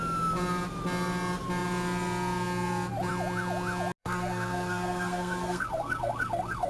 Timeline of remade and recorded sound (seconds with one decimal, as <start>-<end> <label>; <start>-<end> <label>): 0.0-4.0 recorded; 4.0-6.7 remade